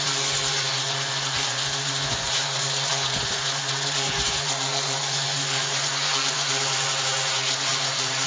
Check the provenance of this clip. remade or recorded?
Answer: remade